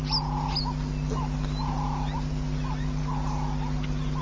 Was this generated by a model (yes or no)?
no